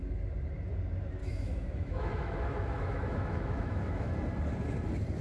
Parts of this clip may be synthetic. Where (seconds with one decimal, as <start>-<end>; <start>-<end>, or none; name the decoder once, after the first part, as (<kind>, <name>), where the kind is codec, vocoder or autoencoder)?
1.2-4.1 (autoencoder, DAC-VAE)